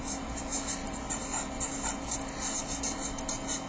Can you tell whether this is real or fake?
real